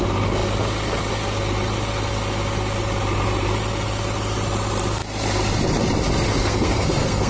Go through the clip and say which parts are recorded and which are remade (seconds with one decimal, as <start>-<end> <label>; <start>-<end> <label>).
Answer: 0.0-6.4 recorded; 6.4-7.3 remade